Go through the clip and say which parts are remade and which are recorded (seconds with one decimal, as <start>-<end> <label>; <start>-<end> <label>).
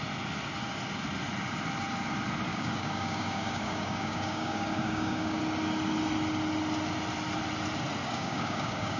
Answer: 0.0-2.5 recorded; 2.5-5.4 remade; 5.4-8.0 recorded; 8.0-9.0 remade